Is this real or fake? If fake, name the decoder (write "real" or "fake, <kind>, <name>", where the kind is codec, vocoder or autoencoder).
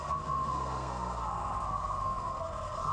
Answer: fake, codec, SNAC